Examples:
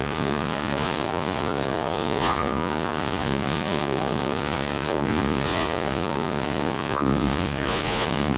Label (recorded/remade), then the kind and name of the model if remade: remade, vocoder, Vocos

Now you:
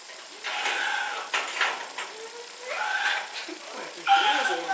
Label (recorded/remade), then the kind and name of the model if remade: recorded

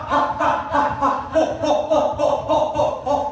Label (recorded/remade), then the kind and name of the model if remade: recorded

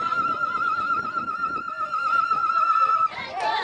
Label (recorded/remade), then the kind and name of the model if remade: remade, vocoder, Vocos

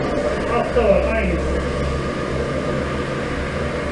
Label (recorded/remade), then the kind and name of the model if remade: recorded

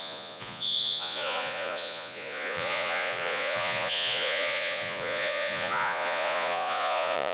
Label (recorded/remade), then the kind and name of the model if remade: remade, vocoder, Vocos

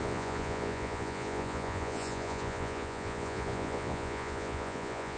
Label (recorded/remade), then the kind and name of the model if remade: remade, vocoder, Vocos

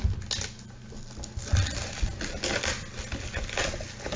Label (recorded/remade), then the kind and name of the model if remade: recorded